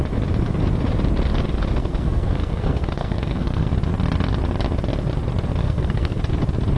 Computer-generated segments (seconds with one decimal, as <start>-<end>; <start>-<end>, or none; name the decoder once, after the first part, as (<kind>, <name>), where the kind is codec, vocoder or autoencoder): 1.8-3.7 (codec, SNAC); 5.6-6.2